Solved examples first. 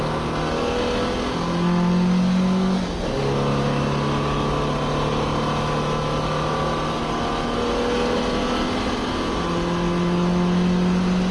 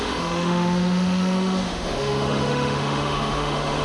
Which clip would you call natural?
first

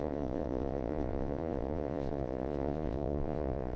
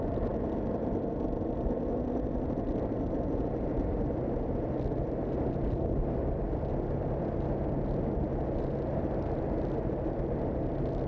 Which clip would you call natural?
second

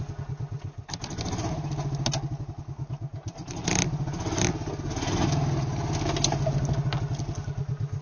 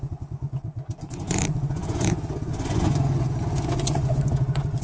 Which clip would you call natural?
first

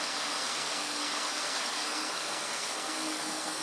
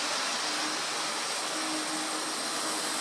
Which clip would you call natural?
second